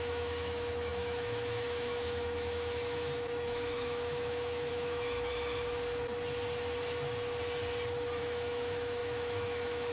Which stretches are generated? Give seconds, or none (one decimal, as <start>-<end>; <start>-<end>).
0.0-5.3; 8.2-9.9